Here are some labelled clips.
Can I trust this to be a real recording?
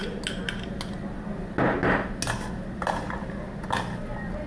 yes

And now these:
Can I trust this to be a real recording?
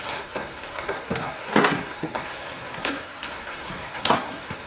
no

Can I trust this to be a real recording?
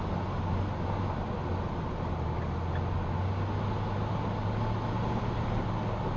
yes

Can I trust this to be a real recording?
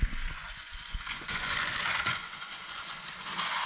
no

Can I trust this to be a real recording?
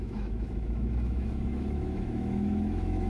no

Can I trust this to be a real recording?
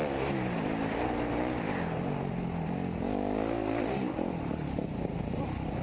yes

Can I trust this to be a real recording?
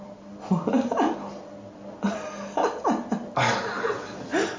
yes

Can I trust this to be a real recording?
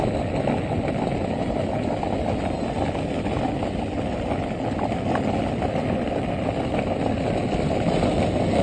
yes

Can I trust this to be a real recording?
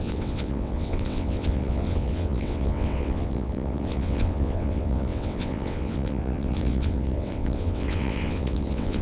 no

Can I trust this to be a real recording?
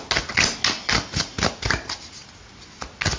yes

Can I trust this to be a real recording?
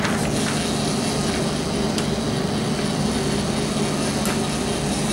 yes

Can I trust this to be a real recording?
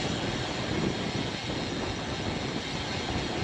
yes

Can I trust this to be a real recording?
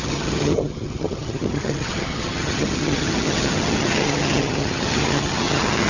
no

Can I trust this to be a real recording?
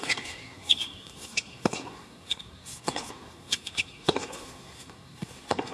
no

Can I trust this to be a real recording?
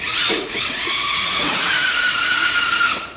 no